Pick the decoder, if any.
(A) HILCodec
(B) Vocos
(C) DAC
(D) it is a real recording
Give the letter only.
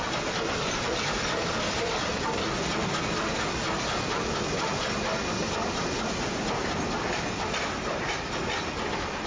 D